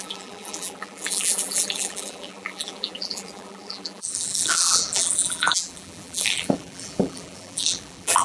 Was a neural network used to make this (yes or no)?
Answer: yes